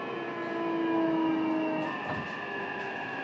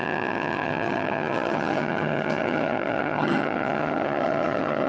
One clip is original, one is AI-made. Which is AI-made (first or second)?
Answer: second